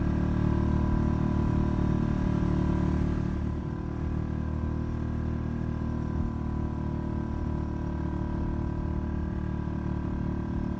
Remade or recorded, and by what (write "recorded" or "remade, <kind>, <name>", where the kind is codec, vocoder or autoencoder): recorded